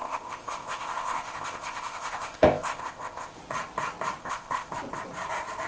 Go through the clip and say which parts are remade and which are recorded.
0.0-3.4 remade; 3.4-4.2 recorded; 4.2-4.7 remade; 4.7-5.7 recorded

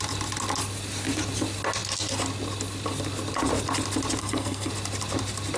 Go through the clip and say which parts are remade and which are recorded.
0.0-4.2 recorded; 4.2-4.7 remade; 4.7-5.6 recorded